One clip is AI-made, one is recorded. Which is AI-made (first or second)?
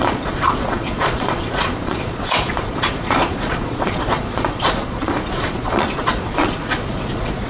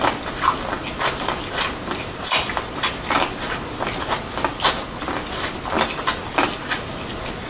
first